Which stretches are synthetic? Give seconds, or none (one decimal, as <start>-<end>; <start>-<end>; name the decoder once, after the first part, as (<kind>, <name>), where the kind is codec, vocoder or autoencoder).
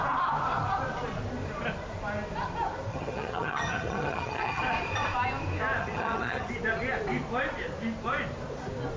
2.9-4.6 (vocoder, HiFi-GAN); 5.8-6.5